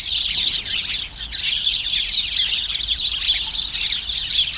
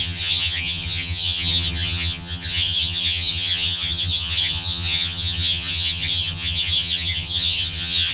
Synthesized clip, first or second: second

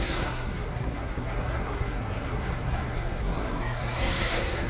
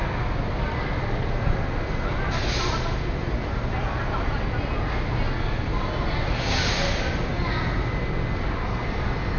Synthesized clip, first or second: first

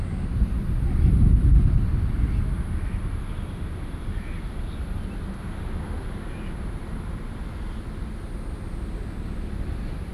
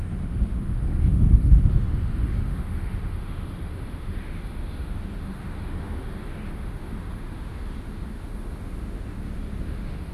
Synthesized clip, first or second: second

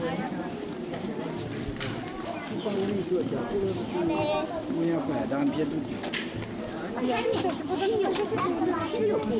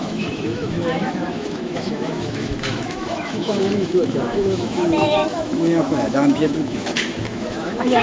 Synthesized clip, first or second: second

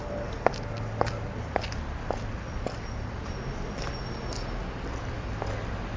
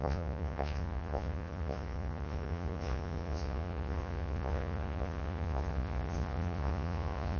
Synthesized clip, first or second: second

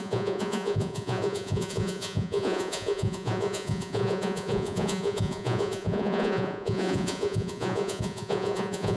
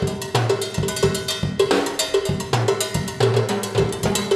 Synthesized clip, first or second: first